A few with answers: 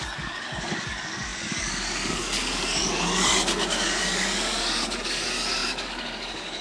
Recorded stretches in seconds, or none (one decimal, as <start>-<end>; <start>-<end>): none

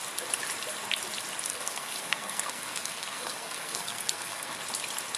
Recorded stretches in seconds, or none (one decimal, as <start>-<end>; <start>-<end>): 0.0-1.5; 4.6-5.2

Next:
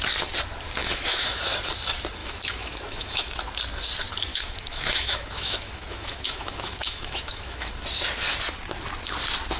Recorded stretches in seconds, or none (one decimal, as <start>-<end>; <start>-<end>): 0.0-0.8; 1.4-2.2; 3.4-4.3; 7.7-9.6